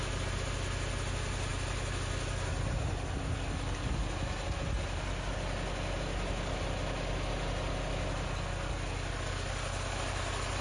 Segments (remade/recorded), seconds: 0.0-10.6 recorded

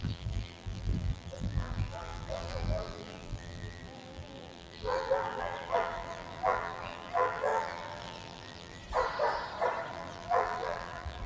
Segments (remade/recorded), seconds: 0.0-8.8 remade; 8.8-9.9 recorded; 9.9-11.3 remade

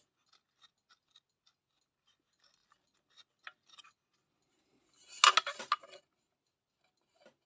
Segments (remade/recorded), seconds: 0.0-7.5 recorded

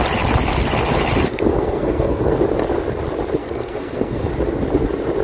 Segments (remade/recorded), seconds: 0.0-1.5 recorded; 1.5-2.4 remade; 2.4-3.4 recorded; 3.4-4.3 remade; 4.3-5.2 recorded

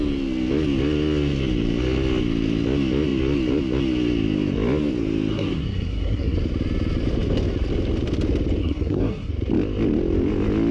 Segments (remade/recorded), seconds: 0.0-5.3 recorded; 5.3-6.4 remade; 6.4-8.6 recorded; 8.6-9.3 remade; 9.3-10.7 recorded